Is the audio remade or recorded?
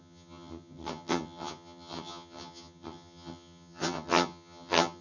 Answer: remade